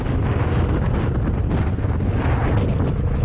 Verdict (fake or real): real